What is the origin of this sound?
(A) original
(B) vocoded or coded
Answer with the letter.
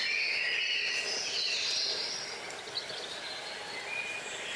A